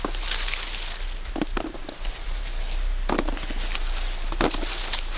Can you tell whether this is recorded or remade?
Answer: recorded